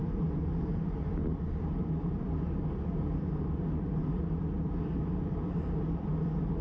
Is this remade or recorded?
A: remade